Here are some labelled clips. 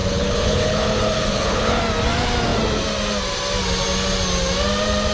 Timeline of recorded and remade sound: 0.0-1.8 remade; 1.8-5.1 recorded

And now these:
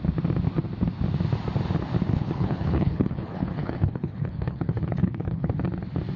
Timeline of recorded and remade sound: 0.0-2.1 recorded; 2.1-5.5 remade; 5.5-6.2 recorded

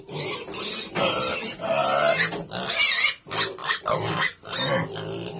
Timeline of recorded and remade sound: 0.0-5.4 recorded

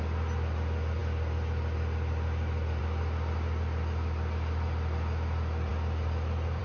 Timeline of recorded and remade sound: 0.0-6.6 recorded